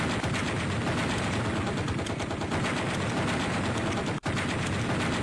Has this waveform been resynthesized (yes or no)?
no